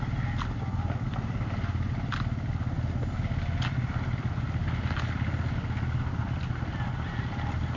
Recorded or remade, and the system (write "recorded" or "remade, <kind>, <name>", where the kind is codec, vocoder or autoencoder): recorded